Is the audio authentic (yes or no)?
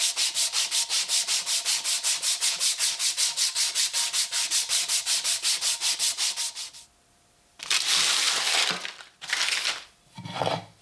yes